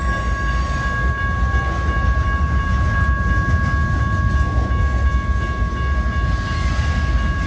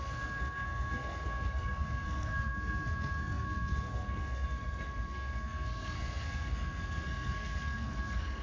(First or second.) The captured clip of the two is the first